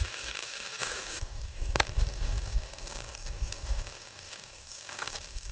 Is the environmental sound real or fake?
fake